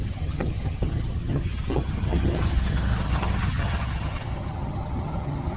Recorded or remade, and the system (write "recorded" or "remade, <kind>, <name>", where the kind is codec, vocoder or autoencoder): remade, vocoder, HiFi-GAN